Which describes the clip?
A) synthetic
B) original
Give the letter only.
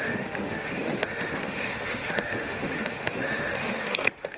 A